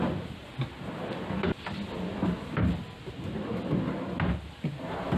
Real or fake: real